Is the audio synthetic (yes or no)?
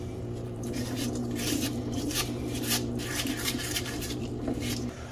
yes